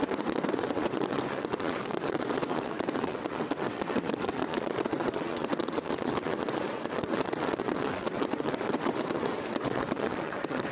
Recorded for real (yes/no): no